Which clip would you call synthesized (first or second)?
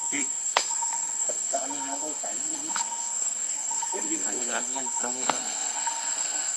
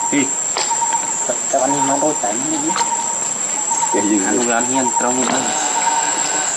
first